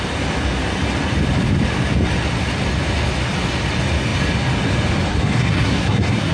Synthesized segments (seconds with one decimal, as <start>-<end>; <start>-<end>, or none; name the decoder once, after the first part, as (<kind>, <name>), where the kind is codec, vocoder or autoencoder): 5.1-6.3 (codec, SNAC)